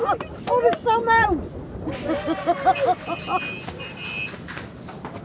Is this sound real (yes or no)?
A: yes